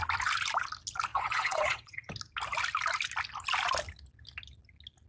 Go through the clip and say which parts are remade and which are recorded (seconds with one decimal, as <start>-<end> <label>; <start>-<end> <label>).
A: 0.0-1.1 recorded; 1.1-2.1 remade; 2.1-5.1 recorded